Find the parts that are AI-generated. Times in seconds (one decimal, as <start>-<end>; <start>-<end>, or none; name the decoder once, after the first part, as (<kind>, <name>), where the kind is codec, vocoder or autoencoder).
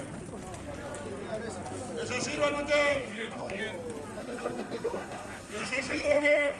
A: 2.9-3.6 (codec, SNAC); 4.2-6.6